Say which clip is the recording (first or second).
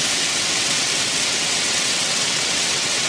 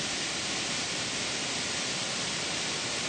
second